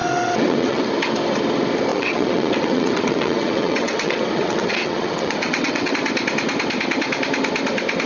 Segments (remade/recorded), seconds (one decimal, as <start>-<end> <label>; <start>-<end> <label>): 0.0-0.9 remade; 0.9-1.9 recorded; 1.9-5.9 remade; 5.9-8.1 recorded